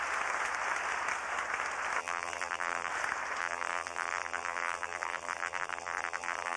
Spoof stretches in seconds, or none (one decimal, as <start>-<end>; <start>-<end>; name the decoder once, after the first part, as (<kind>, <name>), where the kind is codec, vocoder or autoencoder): 2.0-2.9 (vocoder, BigVGAN v2); 3.4-6.6